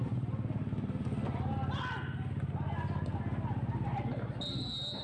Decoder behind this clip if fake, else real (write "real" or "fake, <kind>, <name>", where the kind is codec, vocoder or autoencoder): real